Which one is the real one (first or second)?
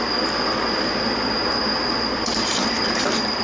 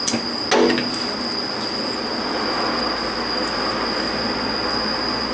second